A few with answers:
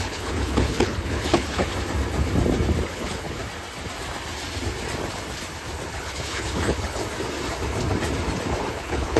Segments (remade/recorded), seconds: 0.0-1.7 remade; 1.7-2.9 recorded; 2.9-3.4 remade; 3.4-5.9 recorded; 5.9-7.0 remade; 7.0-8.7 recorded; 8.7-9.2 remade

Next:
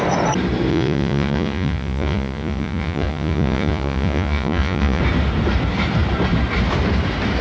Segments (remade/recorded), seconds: 0.0-0.7 recorded; 0.7-5.0 remade; 5.0-7.4 recorded

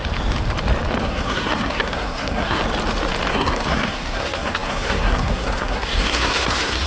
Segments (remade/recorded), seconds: 0.0-1.0 recorded; 1.0-2.6 remade; 2.6-3.3 recorded; 3.3-6.9 remade

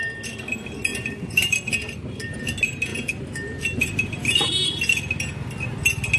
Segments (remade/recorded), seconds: 0.0-0.9 recorded; 0.9-2.5 remade; 2.5-2.9 recorded; 2.9-5.0 remade; 5.0-6.2 recorded

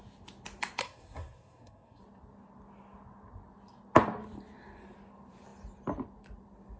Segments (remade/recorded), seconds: 0.0-0.8 recorded; 0.8-2.0 remade; 2.0-6.8 recorded

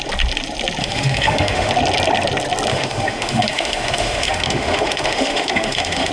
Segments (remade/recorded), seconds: 0.0-0.8 recorded; 0.8-1.7 remade; 1.7-2.7 recorded; 2.7-6.1 remade

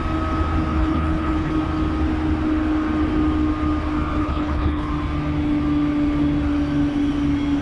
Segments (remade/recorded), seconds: 0.0-0.7 recorded; 0.7-1.5 remade; 1.5-4.2 recorded; 4.2-4.9 remade; 4.9-7.6 recorded